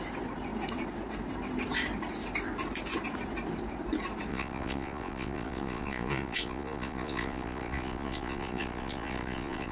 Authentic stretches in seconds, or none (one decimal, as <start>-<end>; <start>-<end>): 0.0-4.3